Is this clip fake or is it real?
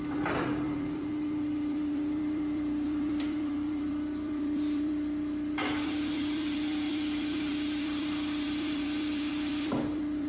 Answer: fake